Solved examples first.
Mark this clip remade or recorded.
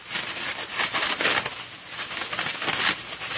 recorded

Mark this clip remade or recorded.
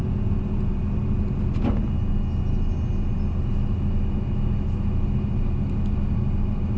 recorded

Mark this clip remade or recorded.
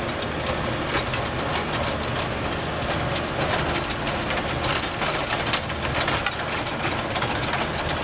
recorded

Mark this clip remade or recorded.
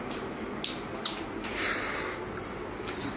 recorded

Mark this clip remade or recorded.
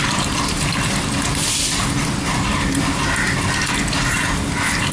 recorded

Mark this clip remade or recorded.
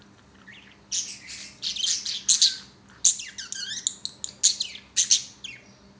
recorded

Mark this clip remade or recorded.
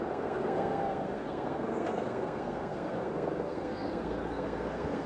remade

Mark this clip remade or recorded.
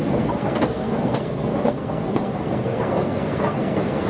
remade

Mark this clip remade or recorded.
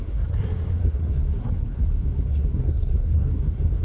remade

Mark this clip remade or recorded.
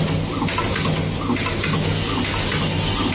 recorded